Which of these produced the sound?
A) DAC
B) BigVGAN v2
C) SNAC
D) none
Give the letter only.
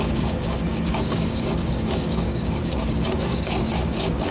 A